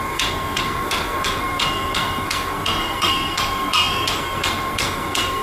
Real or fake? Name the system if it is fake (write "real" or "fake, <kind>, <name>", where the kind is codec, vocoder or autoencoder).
fake, codec, SNAC